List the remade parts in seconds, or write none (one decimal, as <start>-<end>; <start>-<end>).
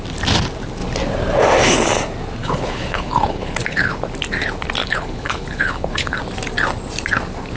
2.4-4.0; 4.8-6.2